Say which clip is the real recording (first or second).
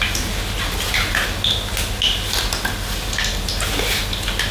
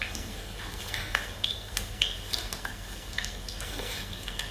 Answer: first